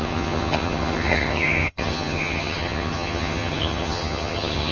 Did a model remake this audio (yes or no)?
yes